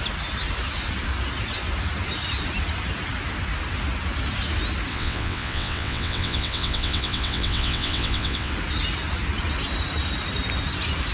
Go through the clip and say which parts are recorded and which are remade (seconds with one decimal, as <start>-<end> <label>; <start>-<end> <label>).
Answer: 0.0-4.9 recorded; 4.9-8.5 remade; 8.5-11.1 recorded